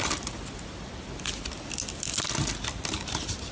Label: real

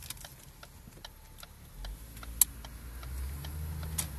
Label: real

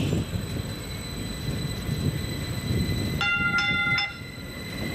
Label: real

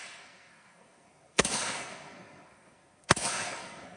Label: fake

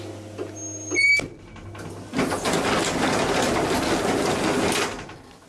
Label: real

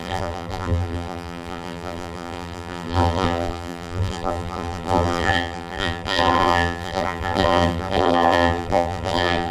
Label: fake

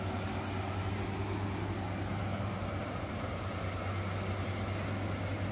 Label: real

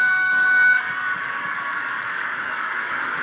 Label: fake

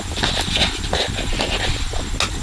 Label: real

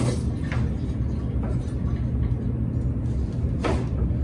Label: real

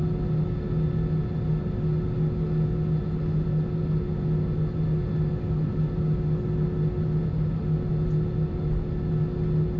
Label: real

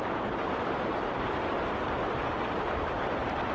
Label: real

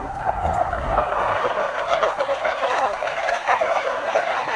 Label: fake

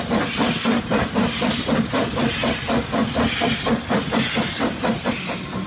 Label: real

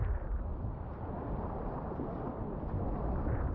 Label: real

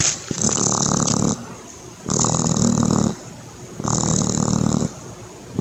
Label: real